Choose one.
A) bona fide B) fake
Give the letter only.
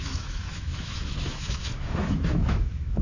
B